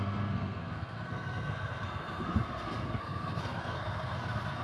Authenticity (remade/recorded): remade